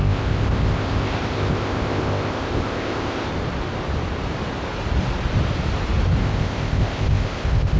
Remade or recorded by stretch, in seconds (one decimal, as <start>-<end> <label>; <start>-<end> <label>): 0.0-3.3 remade; 3.3-6.2 recorded; 6.2-7.8 remade